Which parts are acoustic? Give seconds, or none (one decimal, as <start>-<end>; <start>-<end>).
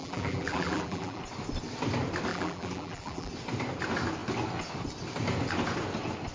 1.2-2.3; 3.3-6.3